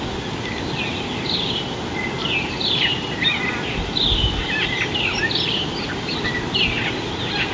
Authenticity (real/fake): real